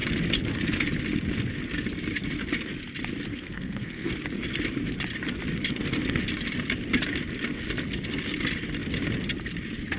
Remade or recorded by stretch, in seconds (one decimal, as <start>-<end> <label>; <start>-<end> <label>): 0.0-3.3 recorded; 3.3-4.1 remade; 4.1-10.0 recorded